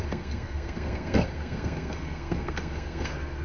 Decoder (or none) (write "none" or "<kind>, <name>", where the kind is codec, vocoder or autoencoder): codec, SNAC